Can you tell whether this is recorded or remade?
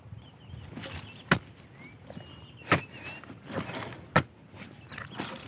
recorded